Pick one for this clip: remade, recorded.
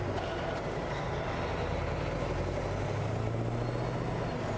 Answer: recorded